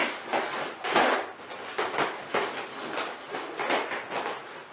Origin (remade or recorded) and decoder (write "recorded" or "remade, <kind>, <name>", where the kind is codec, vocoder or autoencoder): recorded